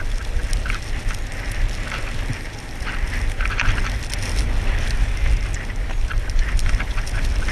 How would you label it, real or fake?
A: real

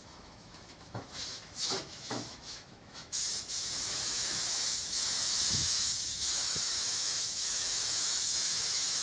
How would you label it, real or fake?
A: fake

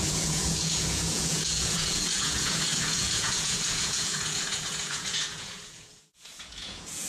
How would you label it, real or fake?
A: fake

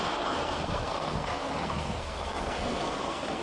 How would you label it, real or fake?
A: fake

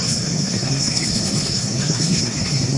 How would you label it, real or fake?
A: fake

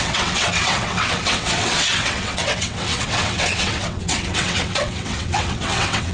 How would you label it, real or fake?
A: fake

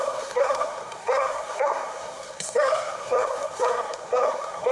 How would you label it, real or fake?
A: fake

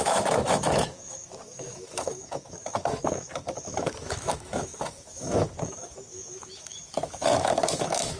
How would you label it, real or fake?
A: fake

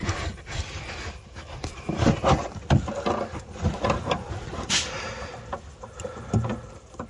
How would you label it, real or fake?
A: real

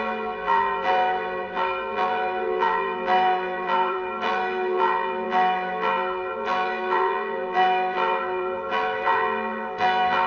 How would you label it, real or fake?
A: fake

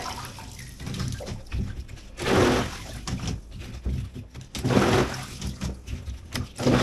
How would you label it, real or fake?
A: real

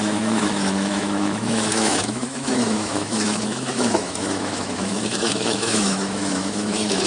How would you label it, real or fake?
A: fake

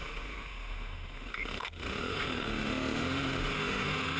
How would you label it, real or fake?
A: fake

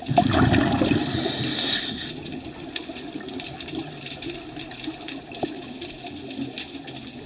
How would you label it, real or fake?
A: real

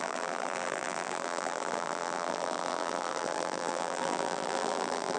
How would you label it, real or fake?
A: fake